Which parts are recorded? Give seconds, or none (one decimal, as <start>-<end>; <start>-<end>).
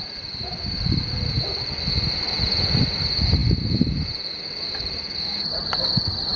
0.0-6.4